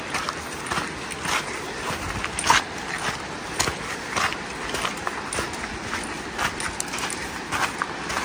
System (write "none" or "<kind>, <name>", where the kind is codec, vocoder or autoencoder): none